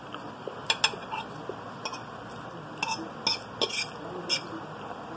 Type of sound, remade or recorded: recorded